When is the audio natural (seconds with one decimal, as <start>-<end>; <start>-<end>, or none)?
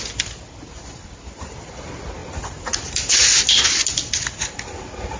0.0-5.2